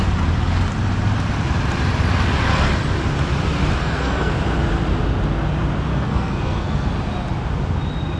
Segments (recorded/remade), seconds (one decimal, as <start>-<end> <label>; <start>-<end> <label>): 0.0-3.8 recorded; 3.8-4.3 remade; 4.3-5.9 recorded; 5.9-6.9 remade; 6.9-8.2 recorded